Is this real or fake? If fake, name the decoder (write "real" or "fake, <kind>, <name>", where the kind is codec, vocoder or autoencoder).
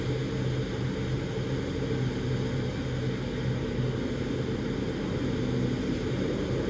real